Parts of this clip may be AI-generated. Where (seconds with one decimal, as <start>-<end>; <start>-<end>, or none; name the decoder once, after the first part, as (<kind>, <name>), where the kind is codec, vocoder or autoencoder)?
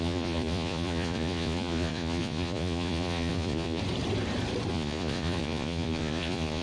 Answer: 0.0-3.8 (vocoder, Vocos); 4.7-6.6